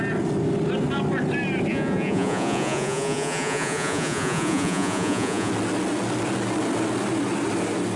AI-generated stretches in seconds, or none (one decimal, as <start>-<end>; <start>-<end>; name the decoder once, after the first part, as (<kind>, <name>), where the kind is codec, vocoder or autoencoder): 1.7-5.5 (vocoder, Vocos)